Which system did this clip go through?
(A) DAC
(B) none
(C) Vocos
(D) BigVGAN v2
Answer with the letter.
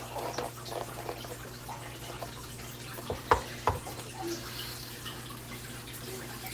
B